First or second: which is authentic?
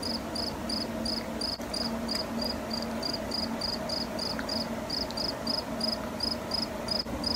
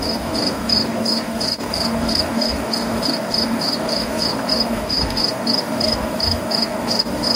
first